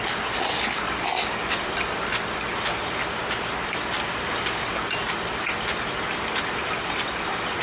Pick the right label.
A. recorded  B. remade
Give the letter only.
A